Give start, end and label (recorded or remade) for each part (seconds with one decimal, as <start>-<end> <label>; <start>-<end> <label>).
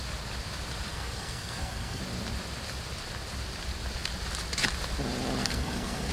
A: 0.0-0.9 recorded; 0.9-2.0 remade; 2.0-5.4 recorded; 5.4-6.1 remade